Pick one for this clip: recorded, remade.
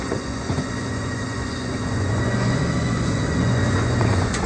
remade